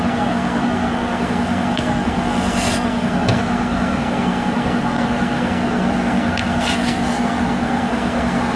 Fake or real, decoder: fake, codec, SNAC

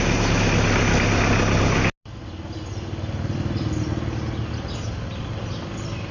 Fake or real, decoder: real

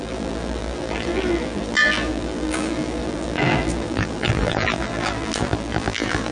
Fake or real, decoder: fake, vocoder, BigVGAN v2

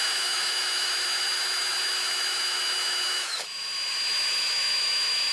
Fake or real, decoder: fake, autoencoder, DAC-VAE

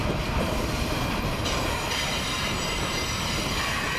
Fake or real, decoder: real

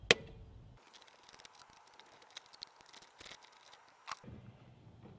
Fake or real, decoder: real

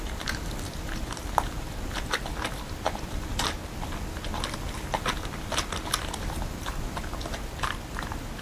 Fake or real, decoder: real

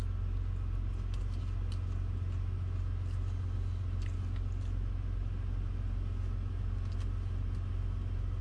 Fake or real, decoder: real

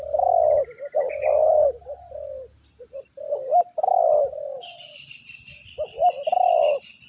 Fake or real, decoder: real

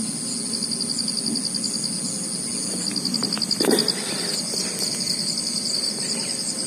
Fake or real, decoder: real